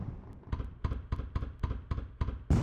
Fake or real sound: real